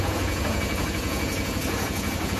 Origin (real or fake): fake